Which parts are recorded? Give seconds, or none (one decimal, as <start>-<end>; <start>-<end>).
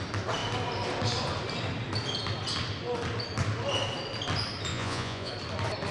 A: 0.0-4.7; 5.3-5.9